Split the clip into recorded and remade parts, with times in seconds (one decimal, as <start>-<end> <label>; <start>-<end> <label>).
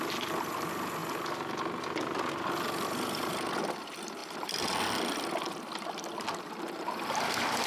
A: 0.0-7.7 recorded